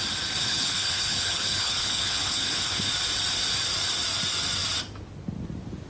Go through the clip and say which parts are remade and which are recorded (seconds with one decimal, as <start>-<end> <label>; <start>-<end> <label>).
0.0-0.4 recorded; 0.4-2.9 remade; 2.9-5.9 recorded